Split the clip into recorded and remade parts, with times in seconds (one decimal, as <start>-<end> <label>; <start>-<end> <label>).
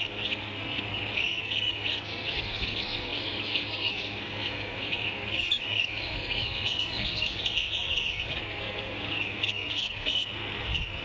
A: 0.0-11.0 remade